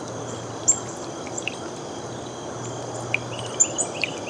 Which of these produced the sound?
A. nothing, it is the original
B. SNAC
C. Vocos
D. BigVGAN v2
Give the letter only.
A